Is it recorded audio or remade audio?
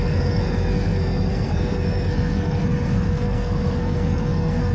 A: remade